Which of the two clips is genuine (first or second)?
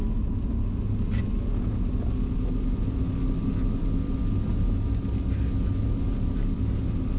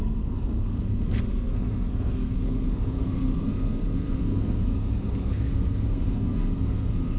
first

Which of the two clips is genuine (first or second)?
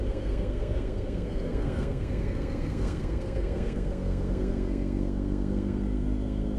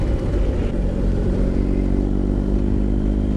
second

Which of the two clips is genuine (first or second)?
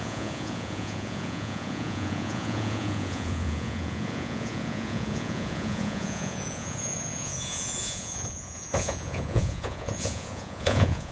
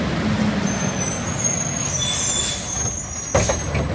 second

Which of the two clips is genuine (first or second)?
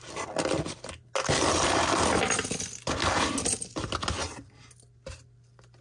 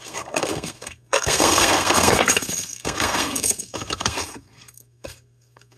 first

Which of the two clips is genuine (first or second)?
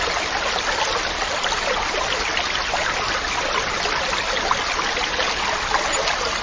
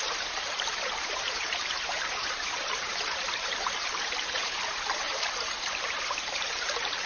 first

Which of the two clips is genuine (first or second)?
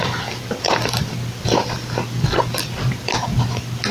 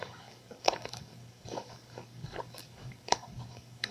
first